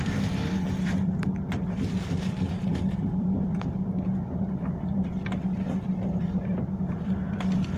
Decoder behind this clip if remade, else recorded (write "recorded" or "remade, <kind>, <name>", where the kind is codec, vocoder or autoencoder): remade, vocoder, BigVGAN v2